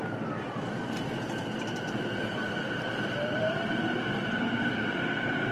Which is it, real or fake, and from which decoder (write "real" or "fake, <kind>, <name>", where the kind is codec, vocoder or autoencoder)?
fake, vocoder, BigVGAN v2